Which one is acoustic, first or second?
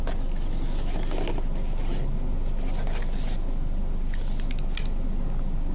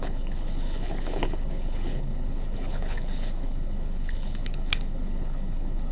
first